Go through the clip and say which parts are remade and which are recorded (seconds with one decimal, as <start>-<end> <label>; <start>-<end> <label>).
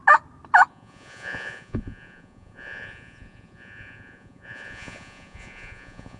0.0-0.7 recorded; 0.7-6.2 remade